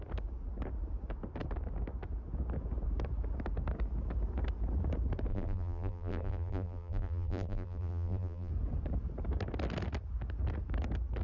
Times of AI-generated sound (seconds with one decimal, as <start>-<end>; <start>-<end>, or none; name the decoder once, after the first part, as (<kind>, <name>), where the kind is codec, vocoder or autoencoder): 5.3-8.5 (vocoder, BigVGAN v2)